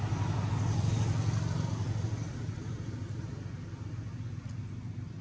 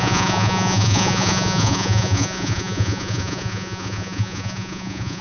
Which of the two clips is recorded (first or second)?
first